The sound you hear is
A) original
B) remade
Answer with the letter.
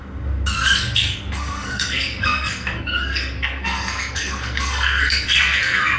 B